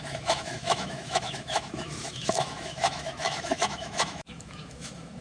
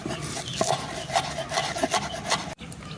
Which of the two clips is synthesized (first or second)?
first